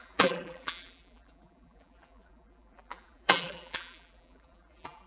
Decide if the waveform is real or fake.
fake